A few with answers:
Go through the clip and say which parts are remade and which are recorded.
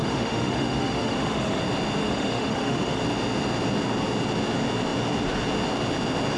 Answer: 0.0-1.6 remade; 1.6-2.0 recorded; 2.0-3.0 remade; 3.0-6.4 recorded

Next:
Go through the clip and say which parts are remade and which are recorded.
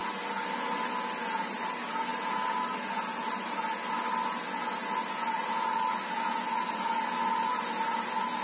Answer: 0.0-8.4 recorded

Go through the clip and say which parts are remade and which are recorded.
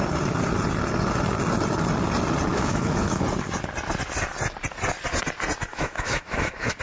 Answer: 0.0-2.5 recorded; 2.5-3.2 remade; 3.2-5.7 recorded; 5.7-6.8 remade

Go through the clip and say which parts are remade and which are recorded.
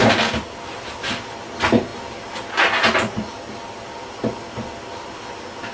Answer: 0.0-5.7 recorded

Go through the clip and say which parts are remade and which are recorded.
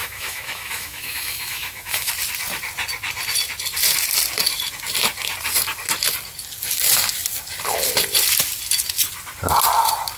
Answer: 0.0-2.1 remade; 2.1-10.2 recorded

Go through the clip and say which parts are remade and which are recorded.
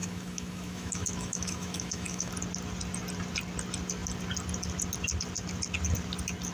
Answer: 0.0-2.3 remade; 2.3-6.5 recorded